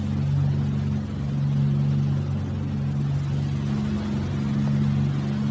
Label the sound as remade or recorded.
recorded